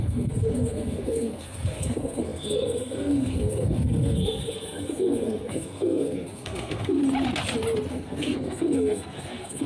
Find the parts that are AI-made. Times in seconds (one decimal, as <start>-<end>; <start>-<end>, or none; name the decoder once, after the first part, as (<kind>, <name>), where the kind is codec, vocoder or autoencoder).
0.0-7.0 (codec, SNAC); 7.9-9.7